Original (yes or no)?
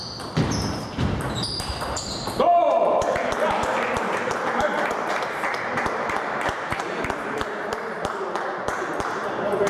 no